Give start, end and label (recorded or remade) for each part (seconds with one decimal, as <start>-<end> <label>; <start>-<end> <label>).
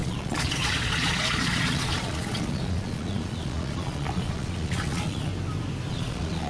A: 0.0-5.3 remade; 5.3-5.9 recorded; 5.9-6.5 remade